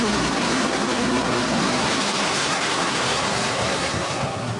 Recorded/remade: remade